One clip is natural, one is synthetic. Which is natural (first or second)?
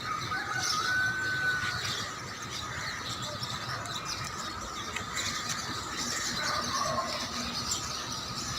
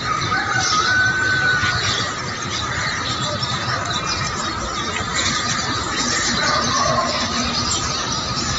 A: first